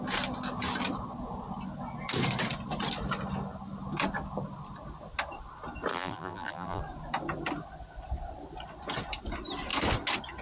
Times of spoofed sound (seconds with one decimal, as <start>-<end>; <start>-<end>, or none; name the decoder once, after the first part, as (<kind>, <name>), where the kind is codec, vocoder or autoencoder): 5.9-6.8 (vocoder, BigVGAN v2)